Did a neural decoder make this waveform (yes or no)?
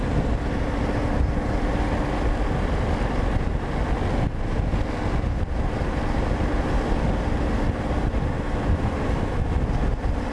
no